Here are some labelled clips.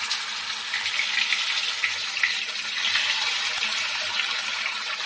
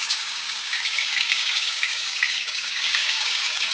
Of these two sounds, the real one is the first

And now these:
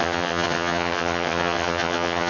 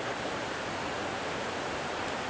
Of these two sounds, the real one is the second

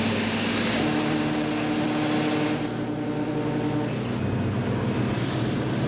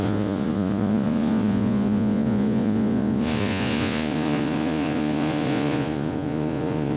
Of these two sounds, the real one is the first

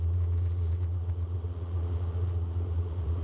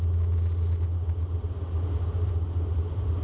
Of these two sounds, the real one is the second